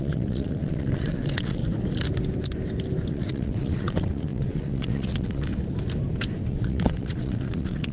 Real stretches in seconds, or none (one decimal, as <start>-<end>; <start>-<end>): 1.6-3.1; 5.5-6.5